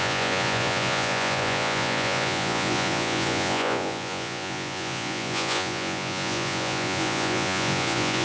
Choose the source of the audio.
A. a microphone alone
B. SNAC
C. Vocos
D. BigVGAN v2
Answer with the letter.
C